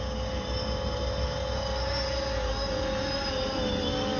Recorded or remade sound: recorded